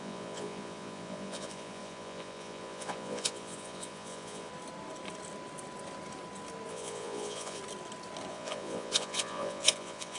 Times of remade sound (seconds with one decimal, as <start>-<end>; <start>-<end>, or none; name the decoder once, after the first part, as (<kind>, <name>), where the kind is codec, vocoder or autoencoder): 0.0-4.5 (vocoder, Vocos); 6.7-7.6; 8.3-10.2